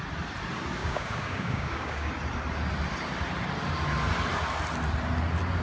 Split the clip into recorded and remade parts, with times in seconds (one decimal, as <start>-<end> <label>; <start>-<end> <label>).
0.0-0.8 recorded; 0.8-2.1 remade; 2.1-5.6 recorded